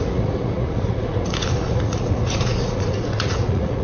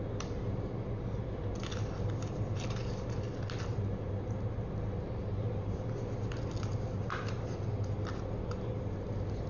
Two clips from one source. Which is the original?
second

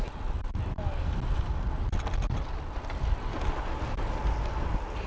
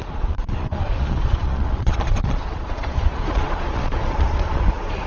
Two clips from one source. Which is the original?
first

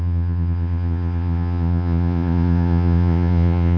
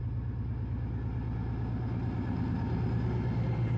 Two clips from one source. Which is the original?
second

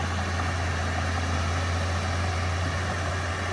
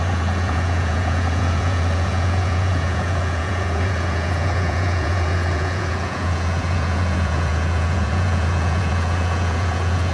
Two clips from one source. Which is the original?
first